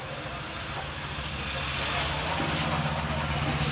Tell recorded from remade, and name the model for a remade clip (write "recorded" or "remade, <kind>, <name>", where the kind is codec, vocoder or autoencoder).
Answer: recorded